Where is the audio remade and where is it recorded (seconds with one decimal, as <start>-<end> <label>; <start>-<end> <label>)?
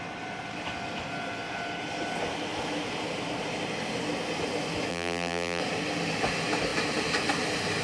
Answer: 0.0-4.9 recorded; 4.9-5.6 remade; 5.6-7.8 recorded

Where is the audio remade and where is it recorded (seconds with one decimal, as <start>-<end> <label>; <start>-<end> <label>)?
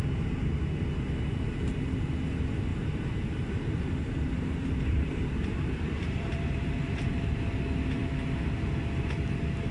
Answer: 0.0-2.7 recorded; 2.7-7.2 remade; 7.2-9.7 recorded